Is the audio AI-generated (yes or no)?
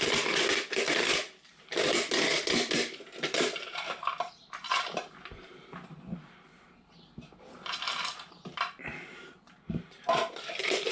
yes